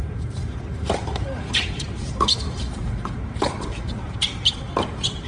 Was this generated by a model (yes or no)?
yes